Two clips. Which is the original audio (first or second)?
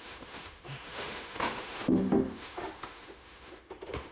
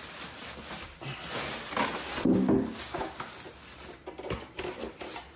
second